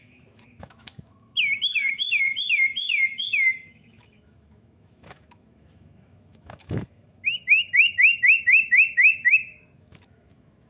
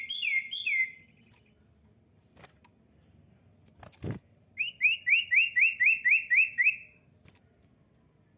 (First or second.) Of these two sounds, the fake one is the first